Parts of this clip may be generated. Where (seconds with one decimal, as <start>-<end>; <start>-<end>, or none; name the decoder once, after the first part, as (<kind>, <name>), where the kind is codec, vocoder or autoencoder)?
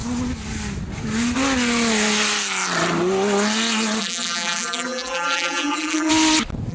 4.0-6.1 (vocoder, BigVGAN v2)